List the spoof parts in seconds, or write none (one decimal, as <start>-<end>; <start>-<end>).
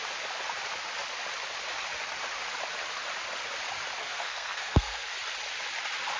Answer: 4.0-5.1